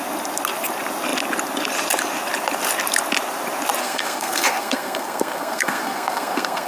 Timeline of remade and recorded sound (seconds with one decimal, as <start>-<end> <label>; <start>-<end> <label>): 0.0-3.8 recorded; 3.8-6.7 remade